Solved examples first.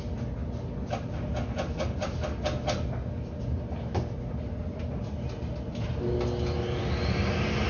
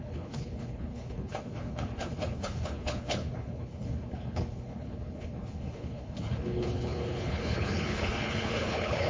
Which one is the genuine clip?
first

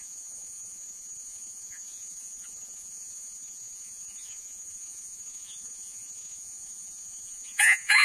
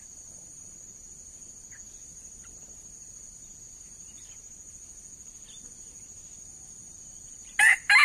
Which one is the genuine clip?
second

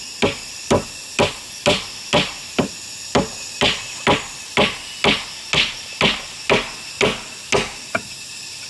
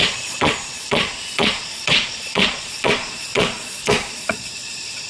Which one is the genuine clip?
first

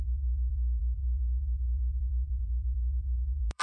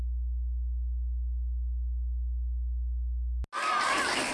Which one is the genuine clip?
second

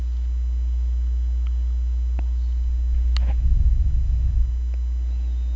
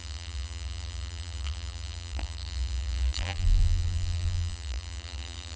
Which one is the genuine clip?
first